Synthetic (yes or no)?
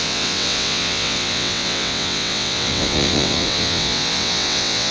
yes